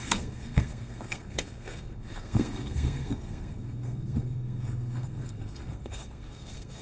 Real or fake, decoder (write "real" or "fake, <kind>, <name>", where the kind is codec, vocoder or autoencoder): fake, codec, SNAC